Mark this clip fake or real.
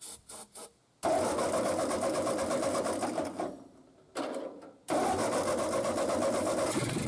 real